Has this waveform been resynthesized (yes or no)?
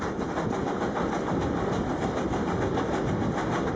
no